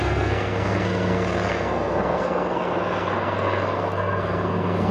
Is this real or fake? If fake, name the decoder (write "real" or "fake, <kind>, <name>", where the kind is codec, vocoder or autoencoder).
fake, codec, SNAC